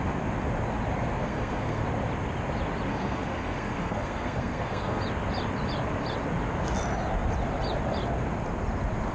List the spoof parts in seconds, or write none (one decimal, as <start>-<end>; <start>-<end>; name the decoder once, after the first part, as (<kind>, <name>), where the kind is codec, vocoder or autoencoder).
1.2-1.8 (codec, SNAC); 2.9-5.0

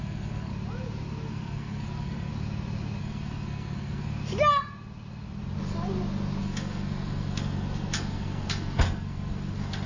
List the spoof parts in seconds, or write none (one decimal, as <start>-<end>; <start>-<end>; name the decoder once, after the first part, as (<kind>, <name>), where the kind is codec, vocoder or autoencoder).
0.0-0.5 (codec, SNAC); 1.3-2.3; 3.0-4.2; 6.4-9.9

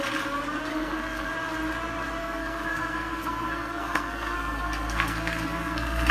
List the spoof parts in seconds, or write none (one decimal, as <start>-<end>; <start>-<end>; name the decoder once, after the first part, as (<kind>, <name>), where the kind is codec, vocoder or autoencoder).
0.7-1.3 (codec, SNAC); 2.2-6.1

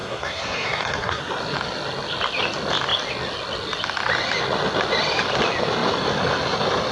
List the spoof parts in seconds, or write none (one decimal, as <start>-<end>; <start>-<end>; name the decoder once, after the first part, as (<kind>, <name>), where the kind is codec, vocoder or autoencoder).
0.0-1.2 (codec, SNAC)

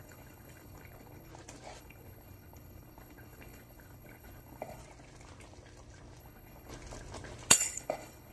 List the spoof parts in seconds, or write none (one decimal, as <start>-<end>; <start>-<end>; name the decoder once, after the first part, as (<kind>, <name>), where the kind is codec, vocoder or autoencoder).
0.0-1.3 (codec, HILCodec); 1.8-4.8; 6.2-6.7; 7.5-8.3